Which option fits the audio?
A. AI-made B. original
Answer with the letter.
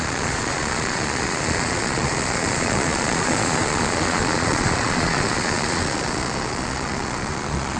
A